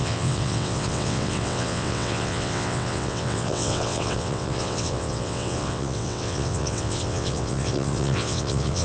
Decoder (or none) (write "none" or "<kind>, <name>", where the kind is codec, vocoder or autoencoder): vocoder, WaveNeXt